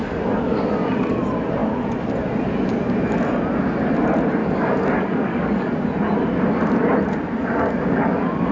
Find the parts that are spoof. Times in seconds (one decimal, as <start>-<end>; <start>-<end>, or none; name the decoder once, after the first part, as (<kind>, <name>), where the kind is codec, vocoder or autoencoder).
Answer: 0.0-0.6 (codec, DAC); 4.4-5.7; 7.4-8.5

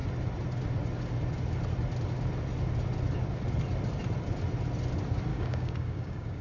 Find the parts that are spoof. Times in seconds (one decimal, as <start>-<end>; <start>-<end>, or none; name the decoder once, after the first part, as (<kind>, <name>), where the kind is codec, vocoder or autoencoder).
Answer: 5.3-6.4 (codec, DAC)

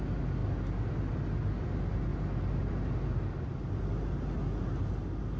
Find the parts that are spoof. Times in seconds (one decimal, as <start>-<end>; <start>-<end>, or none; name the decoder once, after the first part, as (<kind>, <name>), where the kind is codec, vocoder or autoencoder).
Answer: none

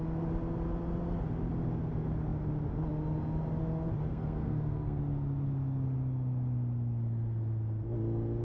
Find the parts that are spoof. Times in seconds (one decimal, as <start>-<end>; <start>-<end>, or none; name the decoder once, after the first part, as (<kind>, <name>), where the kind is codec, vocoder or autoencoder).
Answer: 4.1-5.0 (codec, SNAC)

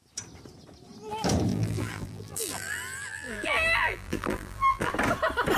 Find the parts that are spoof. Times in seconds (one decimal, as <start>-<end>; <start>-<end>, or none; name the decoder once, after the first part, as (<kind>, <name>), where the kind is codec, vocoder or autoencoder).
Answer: 1.5-4.9 (vocoder, BigVGAN v2)

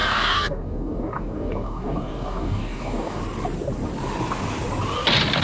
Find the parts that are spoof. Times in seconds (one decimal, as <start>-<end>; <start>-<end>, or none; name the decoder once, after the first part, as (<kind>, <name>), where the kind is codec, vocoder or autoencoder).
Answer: 0.0-3.2 (codec, DAC)